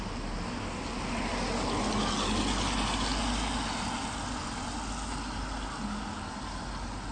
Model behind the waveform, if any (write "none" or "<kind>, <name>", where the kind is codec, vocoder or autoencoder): none